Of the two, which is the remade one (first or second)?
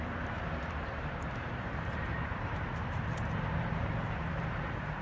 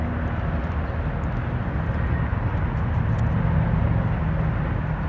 first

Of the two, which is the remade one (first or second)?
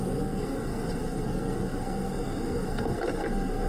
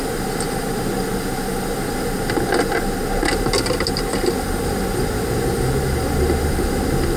first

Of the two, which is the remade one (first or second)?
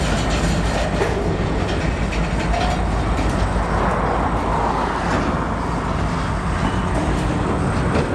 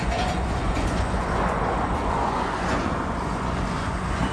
second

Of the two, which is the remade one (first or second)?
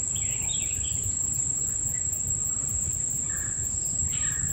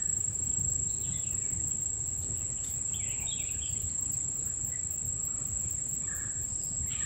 first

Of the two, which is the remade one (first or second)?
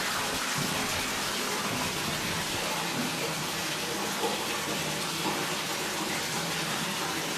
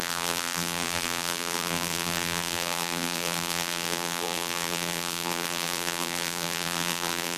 second